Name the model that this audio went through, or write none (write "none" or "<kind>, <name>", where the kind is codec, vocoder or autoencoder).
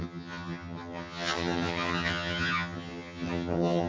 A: vocoder, HiFi-GAN